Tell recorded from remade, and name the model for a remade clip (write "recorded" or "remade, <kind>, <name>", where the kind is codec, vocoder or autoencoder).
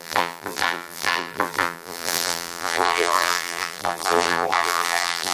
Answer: remade, vocoder, BigVGAN v2